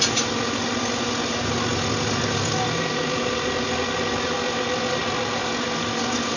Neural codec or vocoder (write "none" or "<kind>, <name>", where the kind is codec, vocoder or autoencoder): none